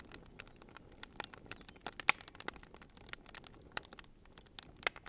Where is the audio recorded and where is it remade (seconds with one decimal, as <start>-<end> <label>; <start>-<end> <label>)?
0.0-5.1 recorded